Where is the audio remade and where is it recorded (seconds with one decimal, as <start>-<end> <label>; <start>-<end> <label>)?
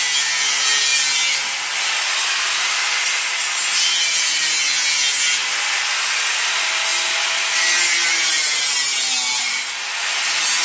0.0-10.6 recorded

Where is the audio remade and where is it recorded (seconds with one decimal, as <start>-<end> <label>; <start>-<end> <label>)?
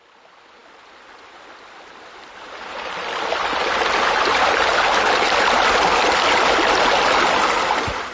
0.0-8.1 recorded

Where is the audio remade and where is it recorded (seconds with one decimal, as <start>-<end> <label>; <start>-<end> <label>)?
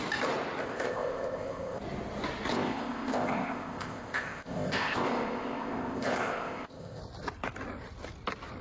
0.0-0.6 recorded; 0.6-1.8 remade; 1.8-2.5 recorded; 2.5-7.0 remade; 7.0-8.6 recorded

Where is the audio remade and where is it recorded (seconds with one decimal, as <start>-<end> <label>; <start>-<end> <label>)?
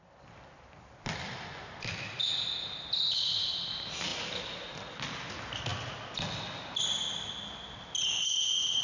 0.0-8.8 recorded